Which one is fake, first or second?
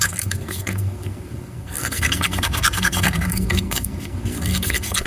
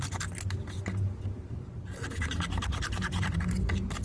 first